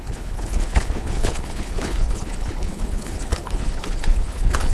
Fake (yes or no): yes